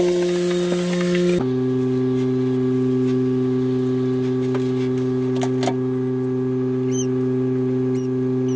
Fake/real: real